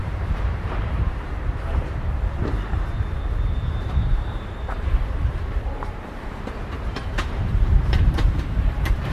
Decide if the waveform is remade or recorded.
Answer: remade